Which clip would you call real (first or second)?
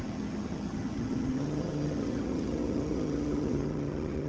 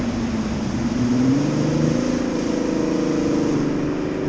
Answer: second